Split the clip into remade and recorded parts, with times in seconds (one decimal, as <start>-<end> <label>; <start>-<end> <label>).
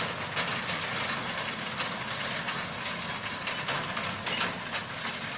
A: 0.0-5.4 recorded